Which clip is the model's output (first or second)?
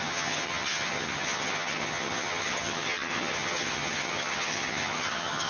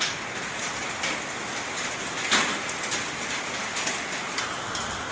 first